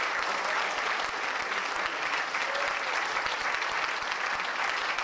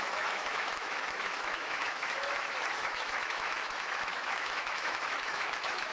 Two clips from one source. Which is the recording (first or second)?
first